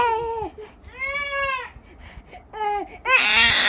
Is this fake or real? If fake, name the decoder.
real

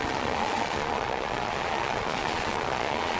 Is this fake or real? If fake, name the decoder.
fake, vocoder, Vocos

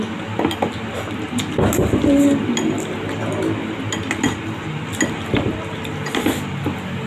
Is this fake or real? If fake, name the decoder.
real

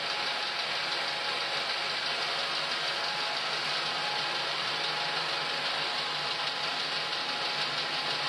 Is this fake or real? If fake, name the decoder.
real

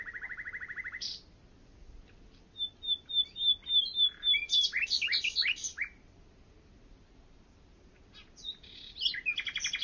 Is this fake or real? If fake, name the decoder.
real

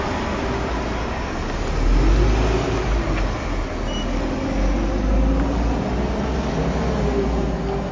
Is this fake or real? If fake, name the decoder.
real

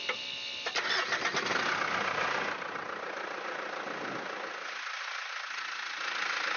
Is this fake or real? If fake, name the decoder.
real